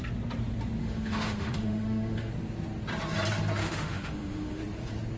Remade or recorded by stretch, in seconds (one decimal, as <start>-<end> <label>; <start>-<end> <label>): 0.0-0.8 recorded; 0.8-2.3 remade; 2.3-3.6 recorded; 3.6-4.6 remade; 4.6-5.2 recorded